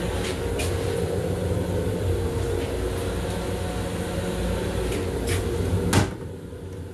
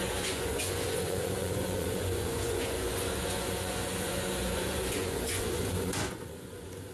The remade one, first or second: second